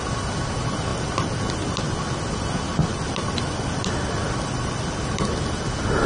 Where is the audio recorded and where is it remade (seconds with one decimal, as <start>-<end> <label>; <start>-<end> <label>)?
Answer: 0.0-0.9 recorded; 0.9-1.8 remade; 1.8-2.9 recorded; 2.9-5.2 remade; 5.2-6.1 recorded